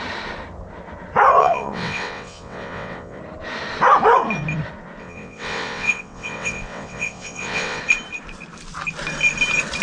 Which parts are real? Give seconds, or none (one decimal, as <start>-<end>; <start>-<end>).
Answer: 0.0-1.4; 3.2-5.0; 7.8-9.8